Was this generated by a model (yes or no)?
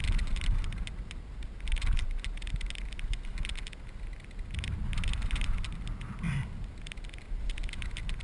no